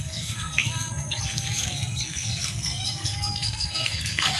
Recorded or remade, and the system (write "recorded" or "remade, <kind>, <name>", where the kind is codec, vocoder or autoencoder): remade, codec, SNAC